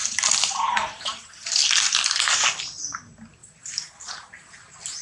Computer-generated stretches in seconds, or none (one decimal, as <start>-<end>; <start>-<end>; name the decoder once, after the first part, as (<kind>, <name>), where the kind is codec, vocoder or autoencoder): 0.0-1.2 (vocoder, BigVGAN v2); 3.4-4.1